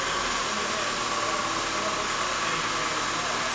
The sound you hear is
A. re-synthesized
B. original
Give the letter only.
B